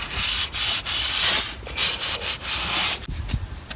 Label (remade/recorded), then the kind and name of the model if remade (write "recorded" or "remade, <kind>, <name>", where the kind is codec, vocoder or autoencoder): recorded